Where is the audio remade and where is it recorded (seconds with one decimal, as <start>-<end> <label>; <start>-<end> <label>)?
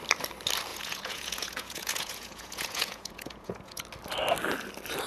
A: 0.0-0.7 recorded; 0.7-3.8 remade; 3.8-5.1 recorded